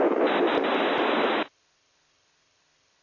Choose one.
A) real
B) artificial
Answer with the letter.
A